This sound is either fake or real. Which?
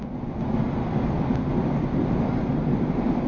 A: real